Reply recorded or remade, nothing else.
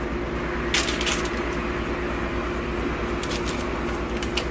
recorded